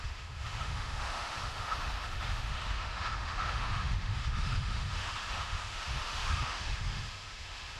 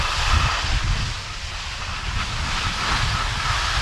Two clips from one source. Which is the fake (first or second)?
first